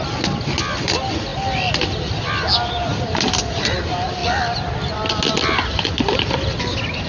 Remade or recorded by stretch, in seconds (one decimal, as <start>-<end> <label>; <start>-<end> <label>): 0.0-7.1 recorded

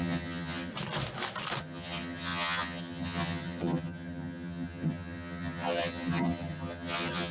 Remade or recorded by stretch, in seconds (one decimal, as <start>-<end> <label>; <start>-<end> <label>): 0.0-0.7 remade; 0.7-1.6 recorded; 1.6-7.3 remade

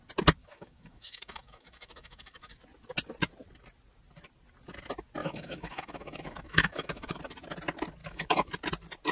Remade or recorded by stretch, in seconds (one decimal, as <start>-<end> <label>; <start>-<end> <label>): 0.0-0.4 recorded; 0.4-2.5 remade; 2.5-5.2 recorded; 5.2-7.2 remade; 7.2-8.0 recorded; 8.0-8.5 remade; 8.5-9.1 recorded

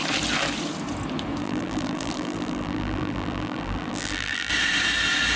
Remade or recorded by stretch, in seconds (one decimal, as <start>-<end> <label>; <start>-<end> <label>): 0.0-1.4 recorded; 1.4-4.5 remade; 4.5-5.4 recorded

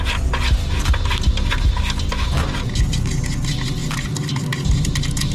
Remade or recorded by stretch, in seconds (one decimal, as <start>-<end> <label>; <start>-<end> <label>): 0.0-5.3 recorded

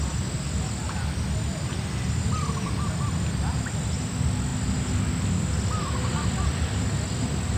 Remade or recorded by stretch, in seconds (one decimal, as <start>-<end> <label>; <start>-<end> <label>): 0.0-7.6 recorded